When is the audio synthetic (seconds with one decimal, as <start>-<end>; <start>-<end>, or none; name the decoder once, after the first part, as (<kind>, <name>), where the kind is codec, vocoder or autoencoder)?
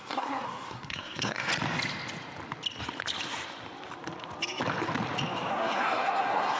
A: 0.0-1.5 (codec, SNAC); 5.5-6.6